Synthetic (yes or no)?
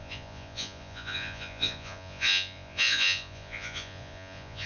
yes